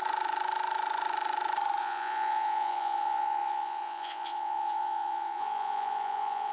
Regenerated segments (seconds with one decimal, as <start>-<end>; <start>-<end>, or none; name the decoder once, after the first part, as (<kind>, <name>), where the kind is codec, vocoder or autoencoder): 1.8-6.5 (vocoder, Vocos)